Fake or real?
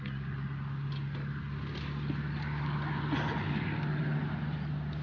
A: real